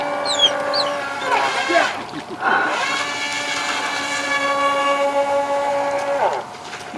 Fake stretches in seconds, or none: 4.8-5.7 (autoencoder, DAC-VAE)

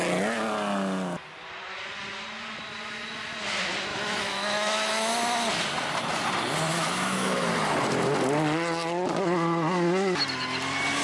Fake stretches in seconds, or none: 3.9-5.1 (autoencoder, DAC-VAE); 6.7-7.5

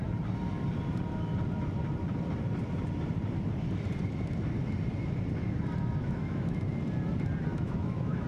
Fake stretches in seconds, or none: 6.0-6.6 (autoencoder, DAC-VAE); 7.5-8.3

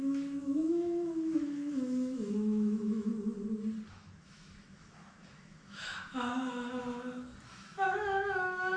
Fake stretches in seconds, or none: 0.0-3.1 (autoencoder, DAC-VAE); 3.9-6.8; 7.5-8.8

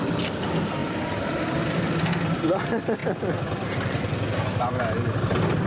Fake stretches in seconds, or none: none